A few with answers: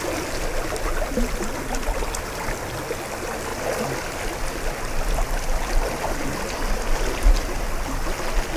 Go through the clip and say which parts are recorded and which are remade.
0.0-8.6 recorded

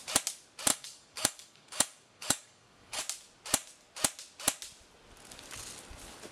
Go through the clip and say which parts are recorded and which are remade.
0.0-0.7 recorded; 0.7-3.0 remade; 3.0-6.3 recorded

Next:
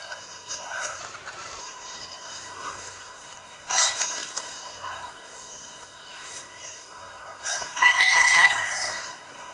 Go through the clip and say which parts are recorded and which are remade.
0.0-1.0 remade; 1.0-1.6 recorded; 1.6-9.5 remade

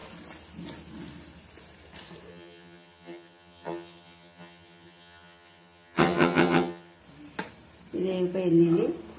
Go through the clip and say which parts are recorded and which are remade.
0.0-2.3 recorded; 2.3-7.0 remade; 7.0-9.2 recorded

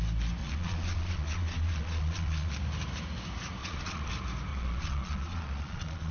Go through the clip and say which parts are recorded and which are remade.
0.0-0.4 recorded; 0.4-2.5 remade; 2.5-3.6 recorded; 3.6-4.1 remade; 4.1-4.5 recorded; 4.5-6.1 remade

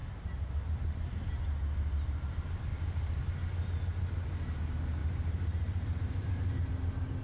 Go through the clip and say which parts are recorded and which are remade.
0.0-5.0 recorded; 5.0-6.7 remade; 6.7-7.2 recorded

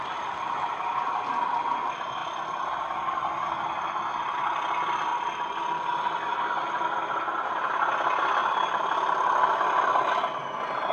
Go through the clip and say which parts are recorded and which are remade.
0.0-10.9 recorded

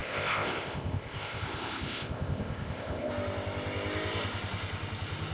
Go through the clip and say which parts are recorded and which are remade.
0.0-3.1 remade; 3.1-5.3 recorded